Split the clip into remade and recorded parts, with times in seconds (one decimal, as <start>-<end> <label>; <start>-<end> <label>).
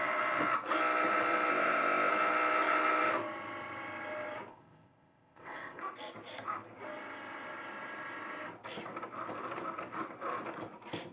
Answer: 0.0-1.5 recorded; 1.5-2.1 remade; 2.1-4.5 recorded; 4.5-5.8 remade; 5.8-11.1 recorded